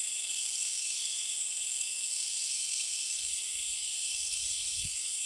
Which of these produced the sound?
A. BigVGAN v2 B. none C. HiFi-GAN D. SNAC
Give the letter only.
D